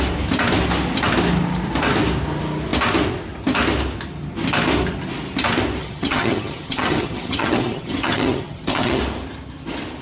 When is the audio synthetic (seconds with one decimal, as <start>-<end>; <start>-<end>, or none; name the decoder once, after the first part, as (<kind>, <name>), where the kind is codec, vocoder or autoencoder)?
5.8-9.0 (vocoder, HiFi-GAN)